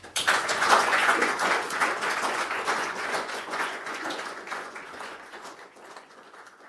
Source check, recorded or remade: remade